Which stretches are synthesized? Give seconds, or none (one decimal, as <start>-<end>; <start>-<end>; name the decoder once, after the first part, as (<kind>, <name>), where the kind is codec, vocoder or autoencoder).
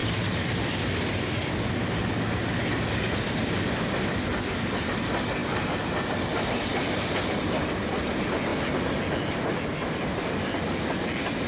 0.0-1.5 (vocoder, BigVGAN v2); 5.4-7.6